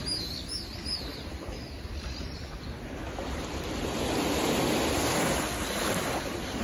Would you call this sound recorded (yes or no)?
yes